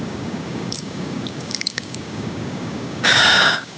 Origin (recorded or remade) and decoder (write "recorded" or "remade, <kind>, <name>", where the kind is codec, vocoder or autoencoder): remade, codec, DAC